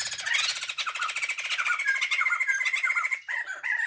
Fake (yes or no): no